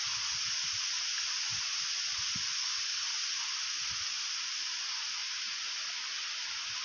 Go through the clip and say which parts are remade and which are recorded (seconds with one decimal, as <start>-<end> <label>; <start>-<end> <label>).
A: 0.0-6.8 recorded